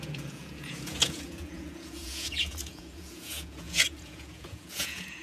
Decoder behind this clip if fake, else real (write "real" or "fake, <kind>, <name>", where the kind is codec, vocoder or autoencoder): fake, vocoder, Vocos